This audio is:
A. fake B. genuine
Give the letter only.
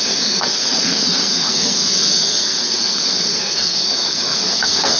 A